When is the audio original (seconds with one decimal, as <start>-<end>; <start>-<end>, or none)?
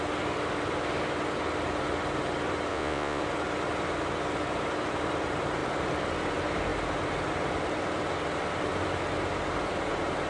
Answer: 0.0-2.7; 3.2-10.3